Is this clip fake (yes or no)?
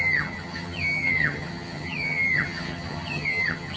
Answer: yes